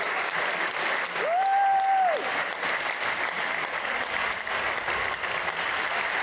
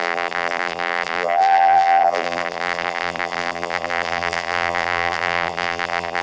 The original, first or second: first